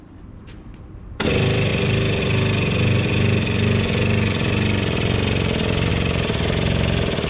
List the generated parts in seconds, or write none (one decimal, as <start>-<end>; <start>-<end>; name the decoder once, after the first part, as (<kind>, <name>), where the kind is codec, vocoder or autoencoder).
0.0-1.7 (vocoder, BigVGAN v2); 5.9-7.3